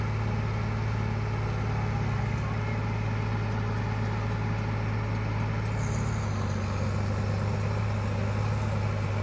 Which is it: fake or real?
real